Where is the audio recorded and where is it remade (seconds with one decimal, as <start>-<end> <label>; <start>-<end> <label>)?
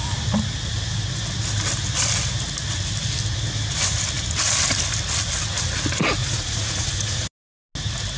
0.0-6.2 recorded; 6.2-7.3 remade; 7.3-8.2 recorded